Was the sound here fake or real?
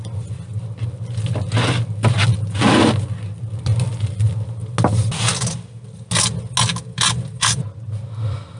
real